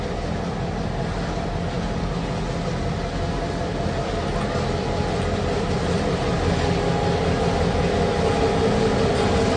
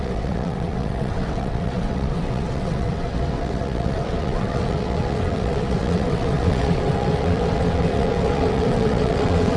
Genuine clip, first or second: first